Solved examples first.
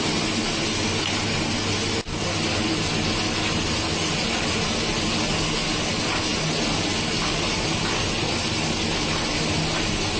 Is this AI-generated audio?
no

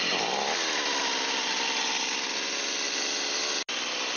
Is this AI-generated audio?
no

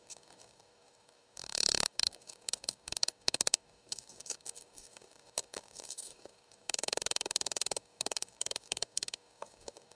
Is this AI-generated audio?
yes